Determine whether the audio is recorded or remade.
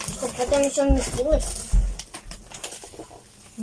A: recorded